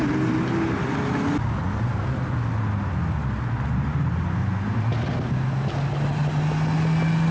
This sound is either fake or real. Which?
real